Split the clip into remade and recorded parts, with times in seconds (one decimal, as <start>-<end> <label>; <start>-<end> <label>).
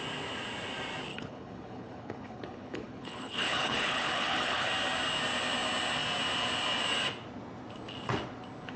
0.0-1.1 recorded; 1.1-4.7 remade; 4.7-8.8 recorded